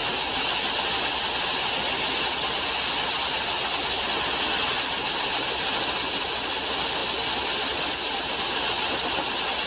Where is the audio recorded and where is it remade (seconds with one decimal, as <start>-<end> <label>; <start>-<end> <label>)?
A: 0.0-9.7 recorded